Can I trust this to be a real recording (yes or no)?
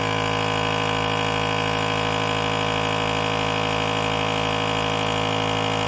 yes